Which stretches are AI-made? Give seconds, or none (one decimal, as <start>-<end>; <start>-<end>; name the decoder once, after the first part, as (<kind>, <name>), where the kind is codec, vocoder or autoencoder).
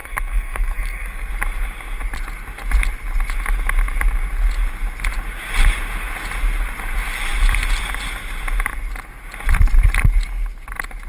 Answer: 0.0-1.3 (codec, SNAC)